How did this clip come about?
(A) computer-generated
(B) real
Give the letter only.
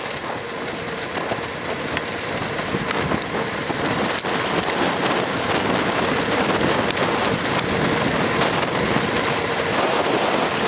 B